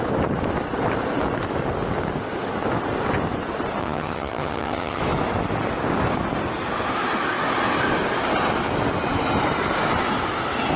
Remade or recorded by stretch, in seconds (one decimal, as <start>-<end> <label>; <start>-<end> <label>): 0.0-3.8 recorded; 3.8-5.0 remade; 5.0-10.8 recorded